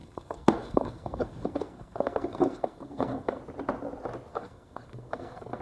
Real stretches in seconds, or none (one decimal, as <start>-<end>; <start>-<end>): 3.4-4.3